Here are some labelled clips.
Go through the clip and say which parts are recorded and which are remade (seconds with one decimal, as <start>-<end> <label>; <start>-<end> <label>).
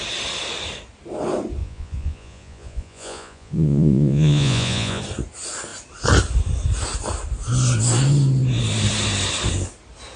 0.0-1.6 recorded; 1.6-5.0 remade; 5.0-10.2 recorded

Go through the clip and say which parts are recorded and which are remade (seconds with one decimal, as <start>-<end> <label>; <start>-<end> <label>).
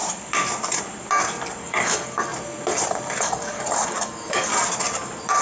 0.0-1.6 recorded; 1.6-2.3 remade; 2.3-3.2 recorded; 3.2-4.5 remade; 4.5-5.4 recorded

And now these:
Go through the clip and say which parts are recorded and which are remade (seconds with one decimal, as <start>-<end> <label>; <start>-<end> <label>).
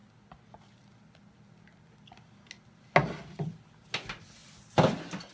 0.0-5.3 recorded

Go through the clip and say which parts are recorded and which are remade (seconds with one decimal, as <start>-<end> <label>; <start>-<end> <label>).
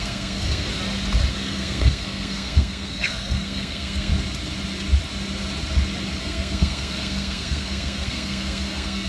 0.0-0.7 remade; 0.7-1.3 recorded; 1.3-4.1 remade; 4.1-6.2 recorded; 6.2-9.1 remade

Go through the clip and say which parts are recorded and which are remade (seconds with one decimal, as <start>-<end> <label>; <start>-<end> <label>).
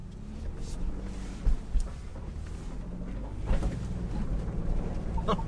0.0-5.5 recorded